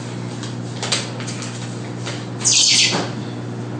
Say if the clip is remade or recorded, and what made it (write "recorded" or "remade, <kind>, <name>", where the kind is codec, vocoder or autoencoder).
recorded